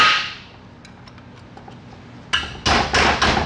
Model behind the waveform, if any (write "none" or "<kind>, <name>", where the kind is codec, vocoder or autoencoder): none